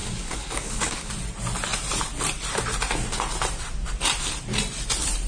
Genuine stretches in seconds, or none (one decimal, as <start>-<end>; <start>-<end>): 1.1-5.3